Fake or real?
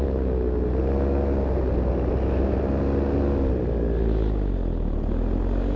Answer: real